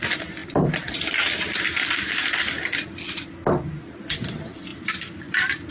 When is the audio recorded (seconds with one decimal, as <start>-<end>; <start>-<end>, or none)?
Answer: 0.0-0.4; 3.3-4.7